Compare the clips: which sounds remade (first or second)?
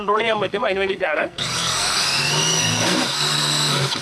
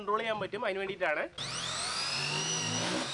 first